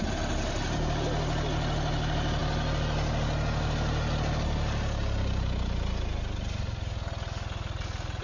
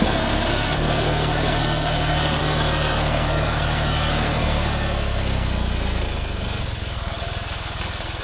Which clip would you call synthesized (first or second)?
second